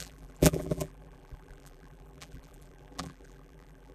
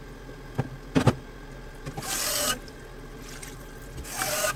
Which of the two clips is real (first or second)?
second